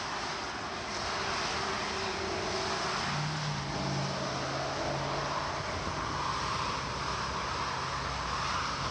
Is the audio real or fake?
real